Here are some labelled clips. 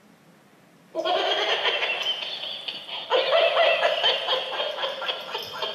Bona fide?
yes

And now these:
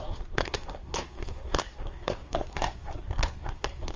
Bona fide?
no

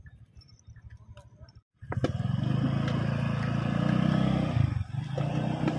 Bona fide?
yes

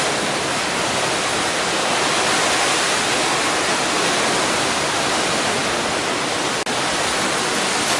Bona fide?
yes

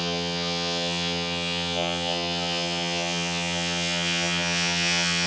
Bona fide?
no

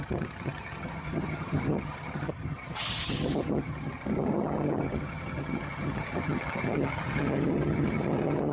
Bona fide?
no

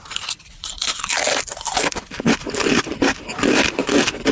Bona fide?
no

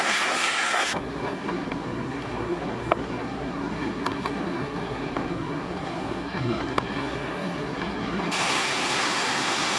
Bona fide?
no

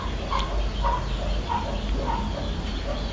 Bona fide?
yes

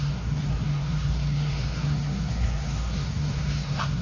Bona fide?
no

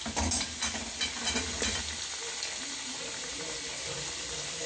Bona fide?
yes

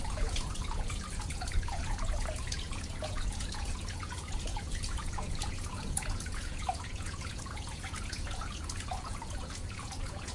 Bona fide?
no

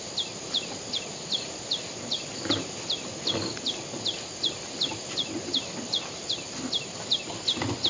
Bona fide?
yes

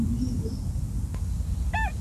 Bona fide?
yes